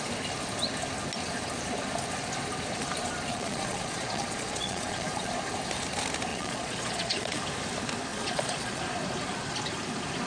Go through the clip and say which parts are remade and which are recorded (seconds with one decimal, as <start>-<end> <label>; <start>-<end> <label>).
0.0-3.3 recorded; 3.3-5.4 remade; 5.4-6.3 recorded; 6.3-7.4 remade; 7.4-8.1 recorded; 8.1-8.8 remade; 8.8-10.3 recorded